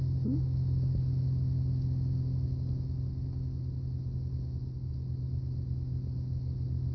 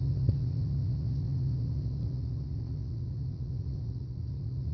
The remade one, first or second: second